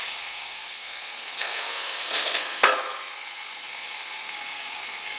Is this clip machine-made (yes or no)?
yes